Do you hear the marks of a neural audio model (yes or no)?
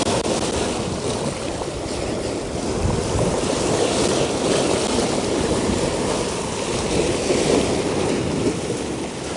no